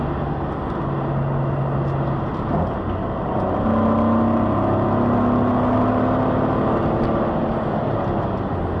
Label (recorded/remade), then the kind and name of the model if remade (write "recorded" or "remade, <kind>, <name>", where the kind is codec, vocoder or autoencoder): recorded